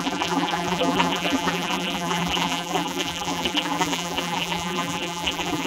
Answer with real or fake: fake